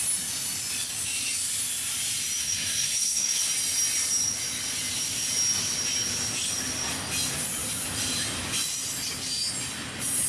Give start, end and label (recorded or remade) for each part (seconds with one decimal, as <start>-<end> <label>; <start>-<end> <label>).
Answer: 0.0-2.4 recorded; 2.4-3.5 remade; 3.5-10.3 recorded